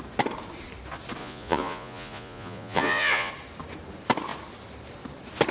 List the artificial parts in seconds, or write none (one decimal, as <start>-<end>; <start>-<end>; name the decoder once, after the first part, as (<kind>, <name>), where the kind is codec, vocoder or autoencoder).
1.2-3.3 (vocoder, Vocos)